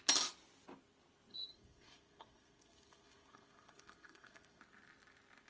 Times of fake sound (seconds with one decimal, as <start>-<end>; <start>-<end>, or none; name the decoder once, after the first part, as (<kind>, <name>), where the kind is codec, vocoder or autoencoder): 1.3-4.6 (codec, SNAC)